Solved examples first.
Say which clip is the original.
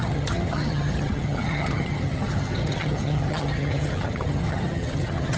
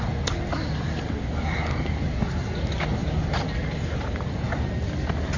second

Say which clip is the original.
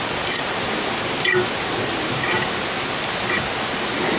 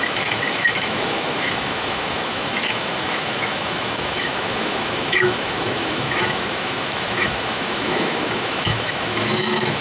first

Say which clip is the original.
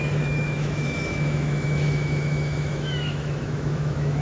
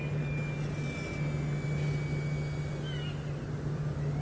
second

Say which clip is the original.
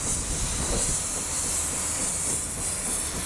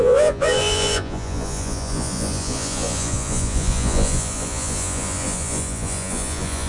first